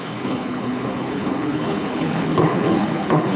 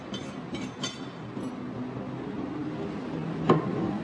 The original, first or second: second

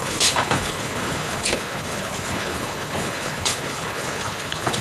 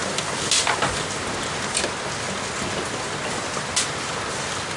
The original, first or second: second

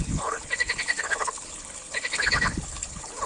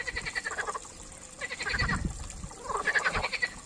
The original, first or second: second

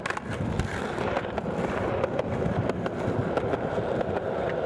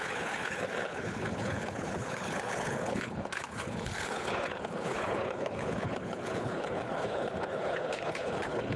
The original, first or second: first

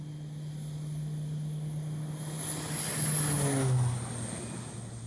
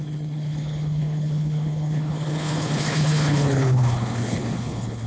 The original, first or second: first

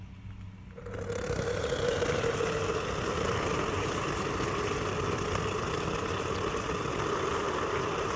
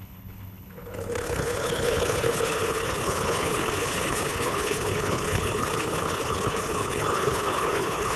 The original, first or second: first